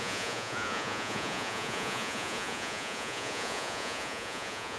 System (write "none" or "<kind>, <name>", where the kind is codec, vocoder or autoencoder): vocoder, Vocos